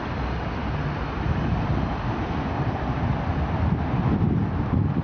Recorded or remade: recorded